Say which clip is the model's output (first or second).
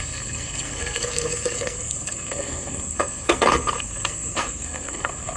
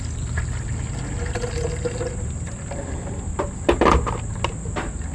first